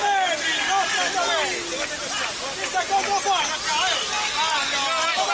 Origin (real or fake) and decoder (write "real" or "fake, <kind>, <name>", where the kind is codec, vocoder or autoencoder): real